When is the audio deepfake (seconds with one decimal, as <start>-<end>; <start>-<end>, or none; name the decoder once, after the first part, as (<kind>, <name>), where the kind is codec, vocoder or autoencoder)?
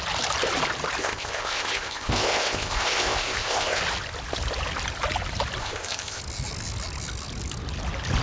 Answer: 1.0-3.8 (codec, ZipCodec); 5.6-6.2